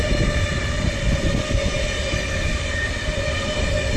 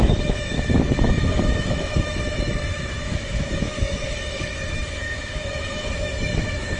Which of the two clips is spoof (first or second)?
second